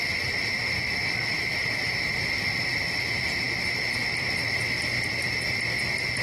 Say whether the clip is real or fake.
real